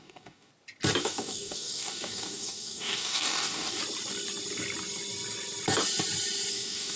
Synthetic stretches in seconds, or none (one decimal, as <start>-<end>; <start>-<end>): 0.0-0.5; 1.0-3.8; 6.5-7.0